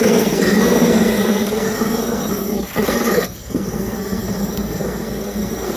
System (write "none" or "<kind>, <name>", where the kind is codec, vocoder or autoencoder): codec, SNAC